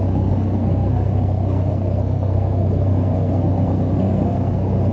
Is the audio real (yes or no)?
no